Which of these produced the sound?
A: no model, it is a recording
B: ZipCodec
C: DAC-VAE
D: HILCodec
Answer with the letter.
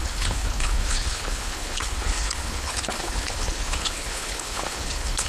D